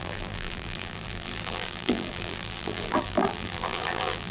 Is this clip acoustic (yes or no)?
no